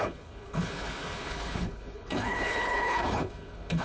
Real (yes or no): no